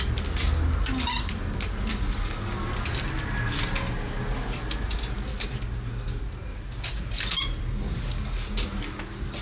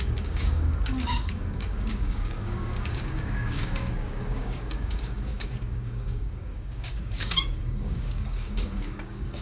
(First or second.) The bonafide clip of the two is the first